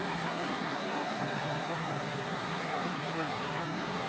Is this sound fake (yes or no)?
yes